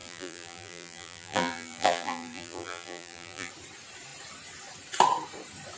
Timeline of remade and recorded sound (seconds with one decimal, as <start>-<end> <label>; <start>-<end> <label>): 0.0-3.5 remade; 3.5-5.8 recorded